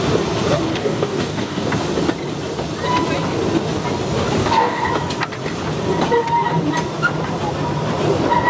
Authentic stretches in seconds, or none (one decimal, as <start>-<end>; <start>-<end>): 0.0-0.7; 1.7-4.4; 4.9-8.5